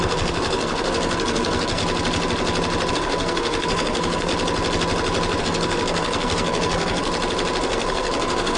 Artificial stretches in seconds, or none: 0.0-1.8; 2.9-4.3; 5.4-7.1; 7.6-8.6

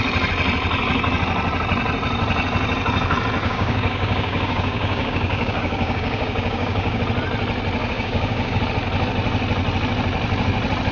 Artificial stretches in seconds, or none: 3.4-7.0; 7.8-8.6

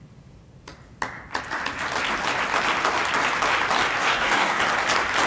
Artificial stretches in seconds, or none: 4.0-4.6

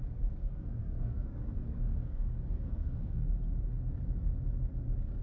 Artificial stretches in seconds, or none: 0.4-3.3

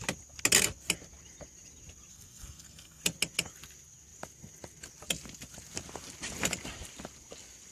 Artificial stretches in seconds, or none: 2.1-3.0